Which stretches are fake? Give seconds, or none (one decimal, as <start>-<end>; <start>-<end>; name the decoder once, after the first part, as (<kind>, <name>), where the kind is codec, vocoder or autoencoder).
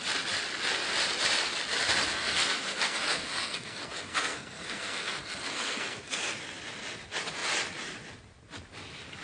2.1-6.4 (codec, SNAC)